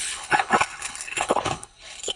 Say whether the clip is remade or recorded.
remade